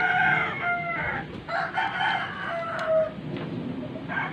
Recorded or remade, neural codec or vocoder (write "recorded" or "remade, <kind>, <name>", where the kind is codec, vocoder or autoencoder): recorded